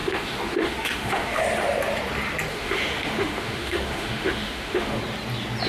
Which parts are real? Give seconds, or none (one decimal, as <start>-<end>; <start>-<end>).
1.4-2.5; 5.0-5.7